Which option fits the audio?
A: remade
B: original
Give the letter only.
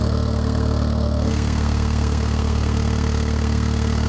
A